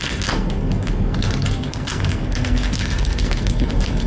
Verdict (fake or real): fake